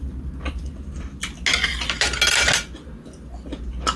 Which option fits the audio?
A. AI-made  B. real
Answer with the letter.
B